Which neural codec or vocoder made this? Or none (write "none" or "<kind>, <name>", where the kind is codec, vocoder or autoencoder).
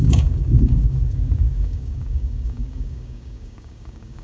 codec, DAC